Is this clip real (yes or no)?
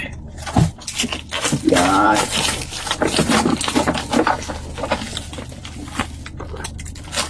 yes